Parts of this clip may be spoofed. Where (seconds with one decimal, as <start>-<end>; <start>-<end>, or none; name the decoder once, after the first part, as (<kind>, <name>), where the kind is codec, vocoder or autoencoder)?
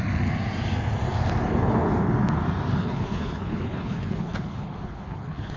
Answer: 2.7-5.6 (codec, HILCodec)